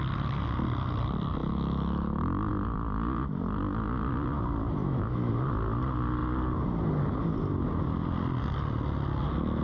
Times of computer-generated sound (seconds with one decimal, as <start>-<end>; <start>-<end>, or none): 1.4-2.5; 4.8-5.3